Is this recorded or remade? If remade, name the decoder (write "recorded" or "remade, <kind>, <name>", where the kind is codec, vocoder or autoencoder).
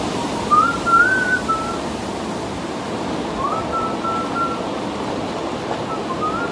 recorded